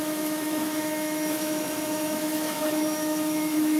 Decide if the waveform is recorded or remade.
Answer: remade